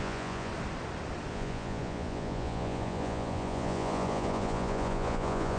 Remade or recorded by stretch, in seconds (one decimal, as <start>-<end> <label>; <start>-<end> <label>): 0.0-0.5 remade; 0.5-1.3 recorded; 1.3-5.6 remade